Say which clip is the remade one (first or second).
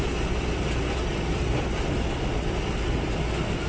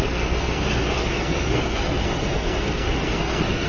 second